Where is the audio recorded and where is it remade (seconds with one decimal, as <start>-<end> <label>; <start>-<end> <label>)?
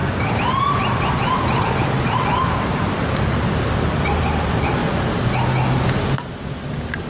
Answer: 0.0-4.2 remade; 4.2-7.1 recorded